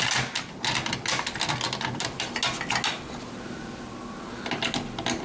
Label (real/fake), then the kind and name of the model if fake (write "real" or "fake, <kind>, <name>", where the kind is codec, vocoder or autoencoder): real